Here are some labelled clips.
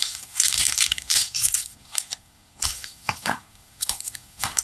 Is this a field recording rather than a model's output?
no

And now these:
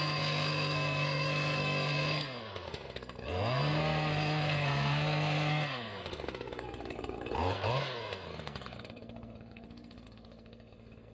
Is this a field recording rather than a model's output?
no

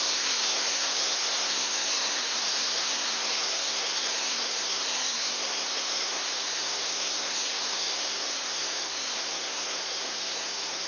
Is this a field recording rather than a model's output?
no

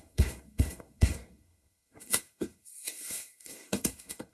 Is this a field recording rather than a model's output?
no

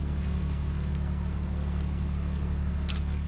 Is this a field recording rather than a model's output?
no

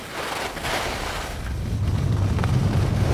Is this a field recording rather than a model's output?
yes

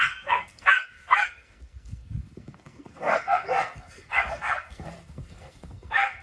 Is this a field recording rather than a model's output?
no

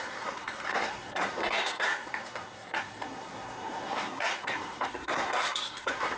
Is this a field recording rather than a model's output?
no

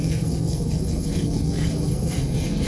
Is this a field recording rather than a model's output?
no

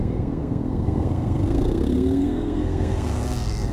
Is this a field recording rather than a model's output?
no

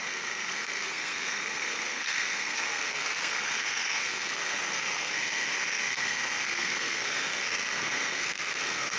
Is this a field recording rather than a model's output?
no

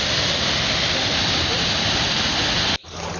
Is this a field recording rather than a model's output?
yes